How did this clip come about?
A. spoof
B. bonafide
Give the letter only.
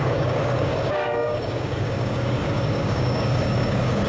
A